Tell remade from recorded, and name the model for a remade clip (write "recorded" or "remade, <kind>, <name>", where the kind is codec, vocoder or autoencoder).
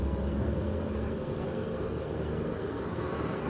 remade, codec, SNAC